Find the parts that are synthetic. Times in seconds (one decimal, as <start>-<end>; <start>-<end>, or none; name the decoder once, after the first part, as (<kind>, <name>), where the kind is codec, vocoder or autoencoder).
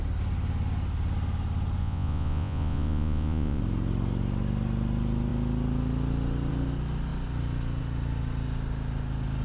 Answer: 1.8-3.6 (vocoder, Vocos)